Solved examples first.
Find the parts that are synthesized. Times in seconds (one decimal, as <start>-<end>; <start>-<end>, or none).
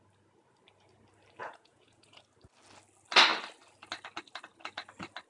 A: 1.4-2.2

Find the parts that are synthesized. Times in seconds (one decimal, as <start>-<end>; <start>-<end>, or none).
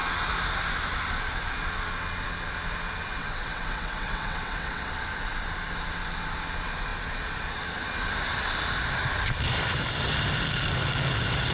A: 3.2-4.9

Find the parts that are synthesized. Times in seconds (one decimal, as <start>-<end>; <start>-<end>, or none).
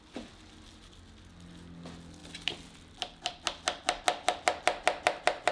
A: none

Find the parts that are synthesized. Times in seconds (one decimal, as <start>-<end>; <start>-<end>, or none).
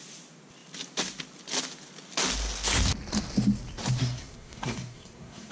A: 4.0-5.5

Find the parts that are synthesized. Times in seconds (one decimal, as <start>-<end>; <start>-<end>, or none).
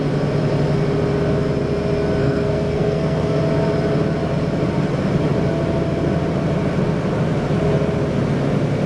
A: 2.2-3.4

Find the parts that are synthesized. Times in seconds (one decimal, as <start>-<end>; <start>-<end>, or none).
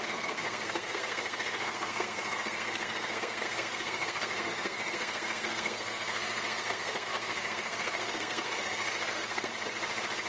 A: 0.0-9.5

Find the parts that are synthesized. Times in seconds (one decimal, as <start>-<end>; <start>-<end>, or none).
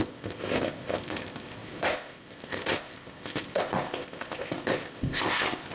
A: 0.0-5.7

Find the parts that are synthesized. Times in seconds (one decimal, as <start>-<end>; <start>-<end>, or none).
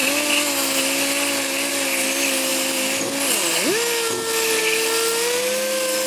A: none